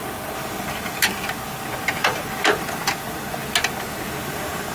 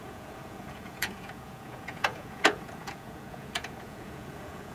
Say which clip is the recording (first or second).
first